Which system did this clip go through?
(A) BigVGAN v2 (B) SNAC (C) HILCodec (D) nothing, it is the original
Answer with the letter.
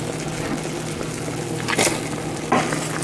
D